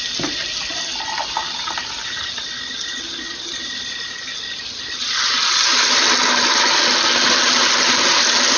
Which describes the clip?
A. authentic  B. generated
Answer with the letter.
A